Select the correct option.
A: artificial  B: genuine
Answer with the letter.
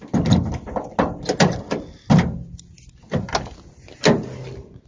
B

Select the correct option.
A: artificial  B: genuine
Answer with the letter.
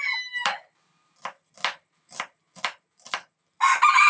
B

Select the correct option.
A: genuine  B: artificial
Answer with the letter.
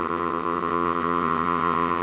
B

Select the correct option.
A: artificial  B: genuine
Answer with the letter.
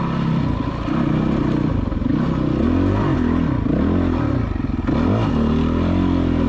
B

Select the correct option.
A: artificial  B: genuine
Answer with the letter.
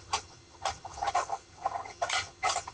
A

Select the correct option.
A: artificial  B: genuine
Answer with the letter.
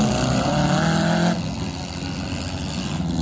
B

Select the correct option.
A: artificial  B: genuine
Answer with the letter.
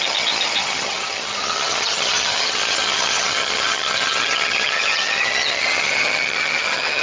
A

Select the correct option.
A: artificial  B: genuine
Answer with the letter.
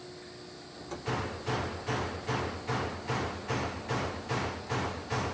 B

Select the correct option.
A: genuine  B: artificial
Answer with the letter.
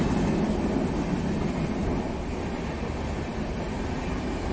A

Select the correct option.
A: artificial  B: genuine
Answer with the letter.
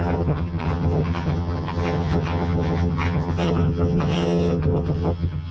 A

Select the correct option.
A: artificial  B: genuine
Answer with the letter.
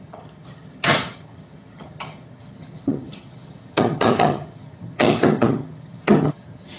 A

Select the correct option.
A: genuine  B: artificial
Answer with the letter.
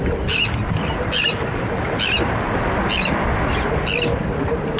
A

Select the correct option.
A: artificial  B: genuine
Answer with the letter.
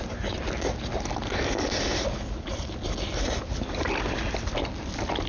B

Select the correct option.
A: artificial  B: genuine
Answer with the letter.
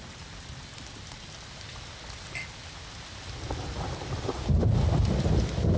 B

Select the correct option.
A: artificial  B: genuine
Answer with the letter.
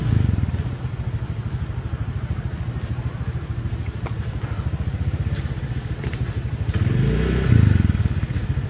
B